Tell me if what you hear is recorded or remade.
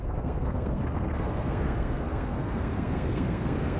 remade